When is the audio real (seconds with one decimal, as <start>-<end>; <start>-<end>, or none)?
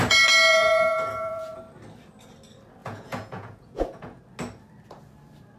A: 0.0-0.5; 1.6-2.8; 4.2-5.6